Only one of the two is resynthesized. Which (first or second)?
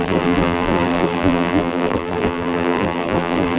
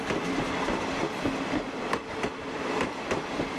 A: first